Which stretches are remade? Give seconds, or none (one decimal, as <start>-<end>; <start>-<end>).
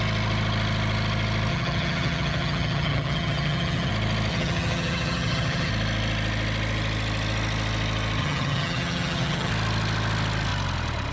1.5-3.9; 4.3-5.7; 8.2-9.5